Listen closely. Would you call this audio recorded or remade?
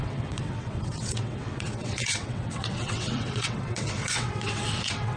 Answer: remade